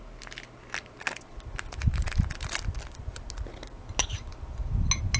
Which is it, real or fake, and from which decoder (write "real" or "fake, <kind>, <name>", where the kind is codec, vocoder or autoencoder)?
real